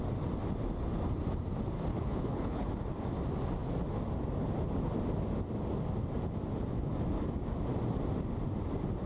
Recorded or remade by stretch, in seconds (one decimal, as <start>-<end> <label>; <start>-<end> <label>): 0.0-1.9 recorded; 1.9-2.7 remade; 2.7-9.1 recorded